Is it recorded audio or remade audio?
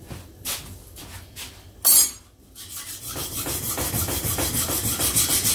recorded